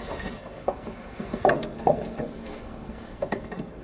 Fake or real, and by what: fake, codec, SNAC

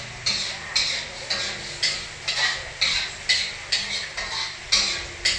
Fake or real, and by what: real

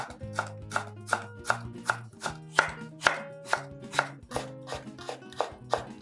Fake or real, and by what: real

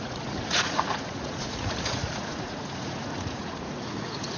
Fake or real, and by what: fake, vocoder, Vocos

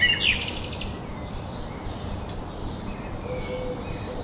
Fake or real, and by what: real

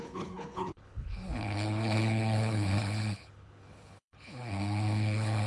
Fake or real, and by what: fake, codec, HILCodec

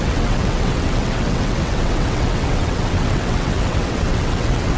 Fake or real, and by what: fake, vocoder, WaveNeXt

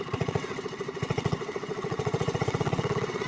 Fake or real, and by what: fake, vocoder, WaveNeXt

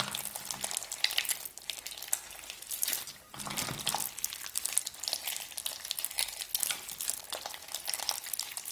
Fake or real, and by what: real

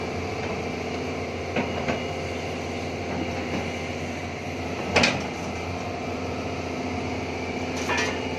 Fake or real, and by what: real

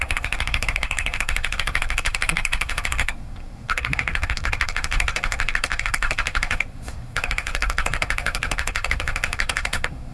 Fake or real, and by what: fake, codec, SNAC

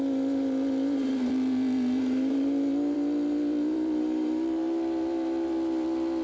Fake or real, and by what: fake, vocoder, BigVGAN v2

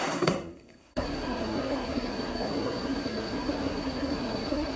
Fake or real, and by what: fake, codec, SNAC